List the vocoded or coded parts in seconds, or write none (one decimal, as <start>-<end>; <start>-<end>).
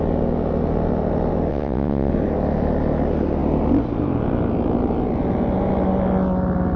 1.5-2.1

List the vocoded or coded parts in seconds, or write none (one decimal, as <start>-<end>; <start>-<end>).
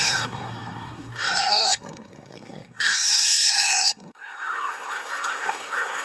0.0-6.0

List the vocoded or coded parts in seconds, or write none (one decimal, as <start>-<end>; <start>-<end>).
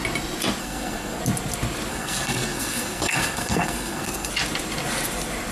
0.6-1.2; 1.9-4.3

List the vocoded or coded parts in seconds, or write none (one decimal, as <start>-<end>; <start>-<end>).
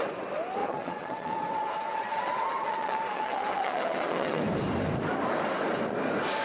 0.6-4.4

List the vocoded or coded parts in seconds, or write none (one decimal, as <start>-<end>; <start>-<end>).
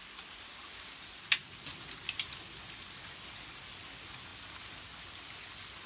none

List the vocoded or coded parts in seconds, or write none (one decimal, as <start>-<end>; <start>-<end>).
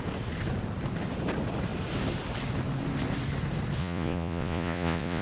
3.8-5.2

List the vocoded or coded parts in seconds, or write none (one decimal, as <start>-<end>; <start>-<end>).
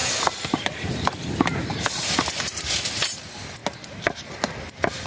0.0-2.9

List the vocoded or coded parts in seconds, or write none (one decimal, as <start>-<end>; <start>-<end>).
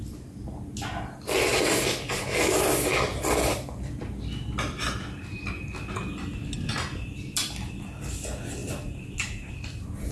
none